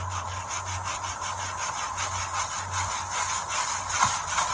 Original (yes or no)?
yes